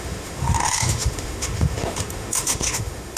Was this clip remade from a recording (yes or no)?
yes